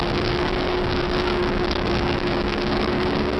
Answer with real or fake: fake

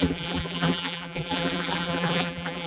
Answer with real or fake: fake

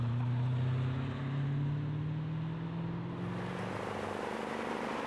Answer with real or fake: real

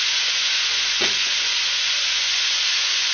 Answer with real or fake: fake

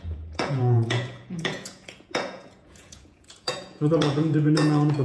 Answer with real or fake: fake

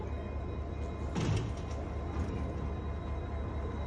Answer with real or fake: real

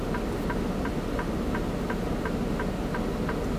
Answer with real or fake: real